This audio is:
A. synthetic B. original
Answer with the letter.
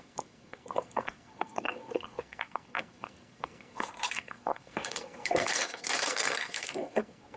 A